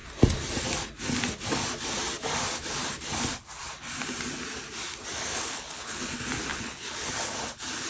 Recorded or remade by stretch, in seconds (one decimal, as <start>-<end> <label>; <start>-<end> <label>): 0.0-5.3 recorded; 5.3-6.1 remade; 6.1-6.5 recorded; 6.5-7.1 remade; 7.1-7.9 recorded